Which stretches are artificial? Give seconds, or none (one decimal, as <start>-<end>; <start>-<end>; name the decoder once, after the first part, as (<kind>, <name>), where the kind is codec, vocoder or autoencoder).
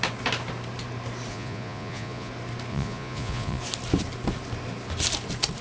1.3-2.3 (vocoder, Vocos); 2.7-3.6